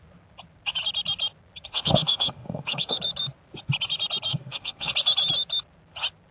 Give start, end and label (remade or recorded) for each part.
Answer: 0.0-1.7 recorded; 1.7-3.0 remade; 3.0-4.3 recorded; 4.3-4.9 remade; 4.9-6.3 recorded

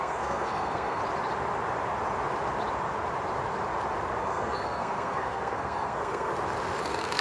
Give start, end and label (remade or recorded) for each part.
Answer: 0.0-1.0 remade; 1.0-4.2 recorded; 4.2-6.3 remade; 6.3-6.8 recorded; 6.8-7.2 remade

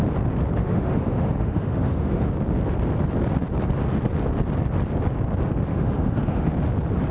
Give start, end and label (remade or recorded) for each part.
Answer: 0.0-0.6 recorded; 0.6-2.3 remade; 2.3-5.7 recorded; 5.7-6.5 remade; 6.5-7.1 recorded